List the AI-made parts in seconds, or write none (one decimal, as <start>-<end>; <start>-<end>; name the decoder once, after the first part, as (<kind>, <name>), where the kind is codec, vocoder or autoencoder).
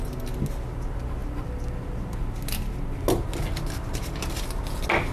none